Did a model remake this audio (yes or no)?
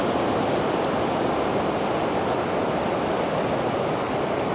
no